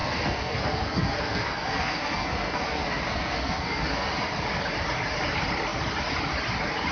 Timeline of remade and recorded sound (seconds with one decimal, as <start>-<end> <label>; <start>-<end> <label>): 0.0-4.1 remade; 4.1-6.9 recorded